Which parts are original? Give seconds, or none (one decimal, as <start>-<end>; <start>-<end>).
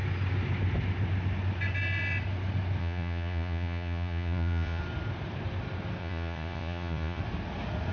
0.0-2.8; 4.8-6.0; 7.2-7.9